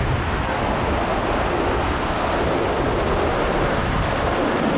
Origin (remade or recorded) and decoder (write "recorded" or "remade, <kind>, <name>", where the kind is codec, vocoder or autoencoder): recorded